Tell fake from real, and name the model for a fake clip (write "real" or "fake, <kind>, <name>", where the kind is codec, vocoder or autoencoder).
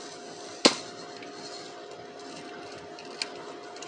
real